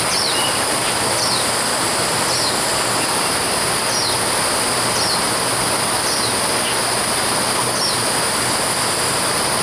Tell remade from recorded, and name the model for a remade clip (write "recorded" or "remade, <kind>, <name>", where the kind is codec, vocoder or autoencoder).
recorded